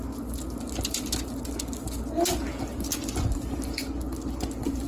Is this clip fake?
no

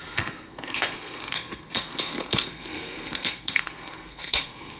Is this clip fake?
yes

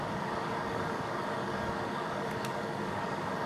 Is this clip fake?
yes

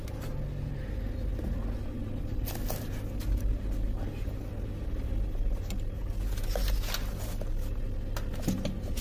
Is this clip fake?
no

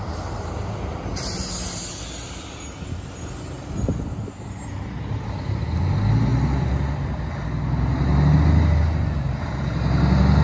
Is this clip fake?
no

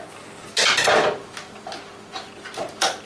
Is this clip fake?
no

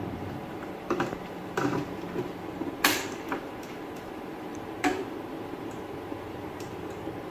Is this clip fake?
yes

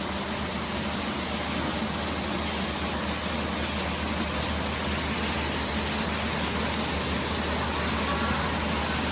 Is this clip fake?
no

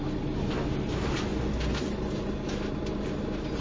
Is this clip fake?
no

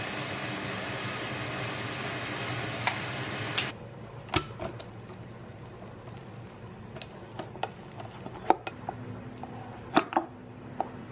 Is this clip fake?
no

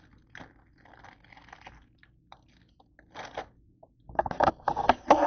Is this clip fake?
no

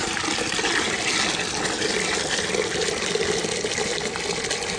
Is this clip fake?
no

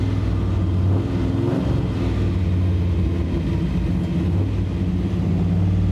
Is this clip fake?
no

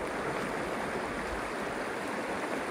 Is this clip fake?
no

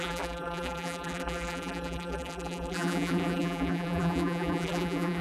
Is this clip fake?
yes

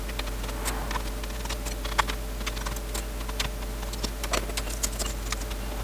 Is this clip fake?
no